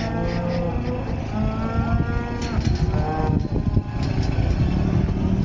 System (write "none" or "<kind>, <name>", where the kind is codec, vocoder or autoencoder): none